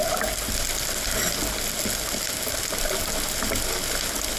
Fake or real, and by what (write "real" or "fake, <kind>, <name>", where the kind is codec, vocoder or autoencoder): real